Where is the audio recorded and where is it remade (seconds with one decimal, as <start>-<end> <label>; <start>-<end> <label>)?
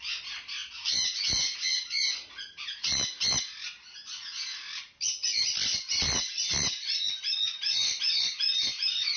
0.0-9.2 recorded